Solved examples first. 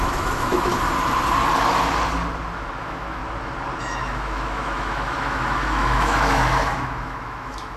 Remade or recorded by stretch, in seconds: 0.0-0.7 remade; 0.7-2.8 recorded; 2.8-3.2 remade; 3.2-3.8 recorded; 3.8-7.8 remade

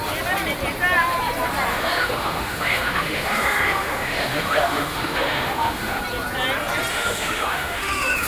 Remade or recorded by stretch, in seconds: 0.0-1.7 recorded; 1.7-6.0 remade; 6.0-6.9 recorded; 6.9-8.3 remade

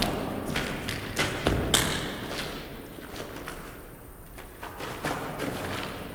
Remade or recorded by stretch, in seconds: 0.0-6.1 recorded